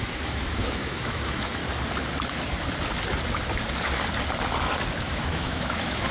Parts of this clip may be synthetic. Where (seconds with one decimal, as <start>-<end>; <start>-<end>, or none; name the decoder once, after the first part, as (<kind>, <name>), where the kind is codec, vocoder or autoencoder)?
0.0-1.6 (autoencoder, DAC-VAE); 5.0-6.1